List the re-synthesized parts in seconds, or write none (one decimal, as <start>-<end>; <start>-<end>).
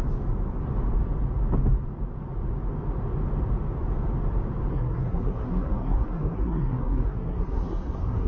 4.7-8.3